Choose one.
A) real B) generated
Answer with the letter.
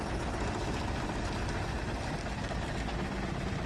A